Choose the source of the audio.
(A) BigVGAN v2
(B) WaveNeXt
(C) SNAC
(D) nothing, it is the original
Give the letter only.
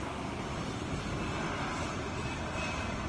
D